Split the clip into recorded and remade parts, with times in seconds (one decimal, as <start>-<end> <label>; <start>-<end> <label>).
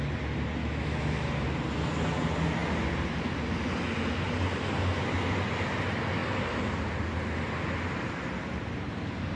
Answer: 0.0-0.6 recorded; 0.6-1.3 remade; 1.3-9.4 recorded